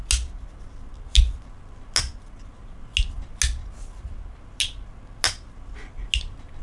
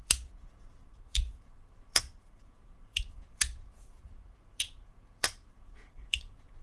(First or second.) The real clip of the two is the first